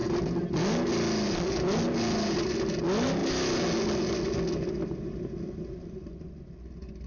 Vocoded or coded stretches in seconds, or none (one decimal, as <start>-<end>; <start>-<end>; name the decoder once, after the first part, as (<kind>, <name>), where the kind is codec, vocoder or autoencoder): none